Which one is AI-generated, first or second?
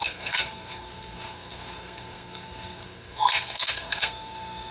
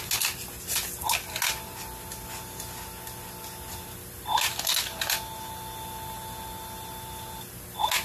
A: first